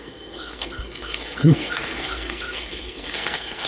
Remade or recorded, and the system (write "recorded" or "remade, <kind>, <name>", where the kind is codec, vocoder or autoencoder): remade, codec, SNAC